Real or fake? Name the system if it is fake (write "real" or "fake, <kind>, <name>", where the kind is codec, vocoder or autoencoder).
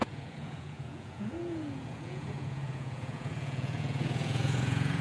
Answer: fake, vocoder, Vocos